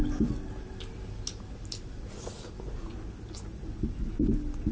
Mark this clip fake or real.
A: real